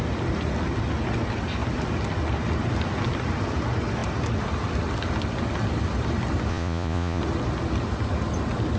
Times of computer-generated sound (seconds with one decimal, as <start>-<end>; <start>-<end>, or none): 6.5-7.2